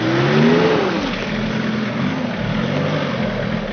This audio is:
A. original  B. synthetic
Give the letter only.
A